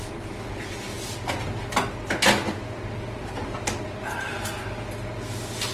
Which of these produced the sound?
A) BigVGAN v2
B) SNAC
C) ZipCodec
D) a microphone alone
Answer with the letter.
D